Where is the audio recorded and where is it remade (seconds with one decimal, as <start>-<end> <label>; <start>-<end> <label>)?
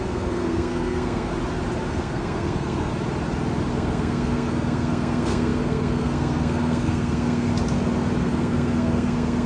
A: 0.0-1.3 remade; 1.3-1.9 recorded; 1.9-2.9 remade; 2.9-3.7 recorded; 3.7-7.5 remade; 7.5-8.2 recorded; 8.2-9.5 remade